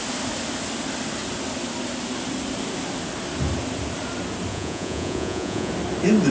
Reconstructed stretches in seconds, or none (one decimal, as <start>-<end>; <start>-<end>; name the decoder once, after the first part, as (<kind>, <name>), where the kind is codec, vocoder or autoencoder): 4.5-5.7 (vocoder, Vocos)